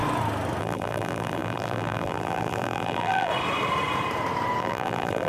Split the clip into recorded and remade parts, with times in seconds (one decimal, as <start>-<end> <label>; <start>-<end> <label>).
0.0-0.6 recorded; 0.6-3.3 remade; 3.3-4.6 recorded; 4.6-5.3 remade